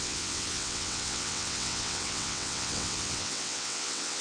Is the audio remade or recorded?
remade